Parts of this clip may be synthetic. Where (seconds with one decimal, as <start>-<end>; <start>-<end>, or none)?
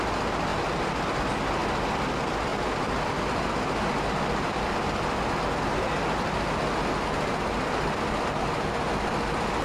none